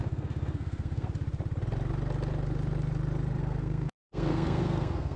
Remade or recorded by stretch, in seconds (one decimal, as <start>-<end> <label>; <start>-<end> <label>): 0.0-1.1 remade; 1.1-3.4 recorded; 3.4-5.2 remade